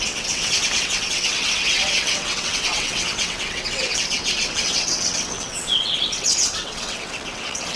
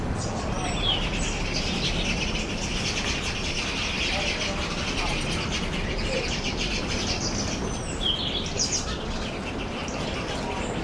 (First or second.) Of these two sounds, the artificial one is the first